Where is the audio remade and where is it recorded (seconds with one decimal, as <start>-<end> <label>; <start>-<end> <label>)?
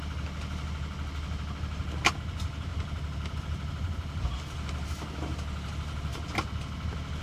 0.0-7.2 recorded